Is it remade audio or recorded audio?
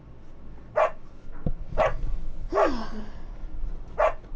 recorded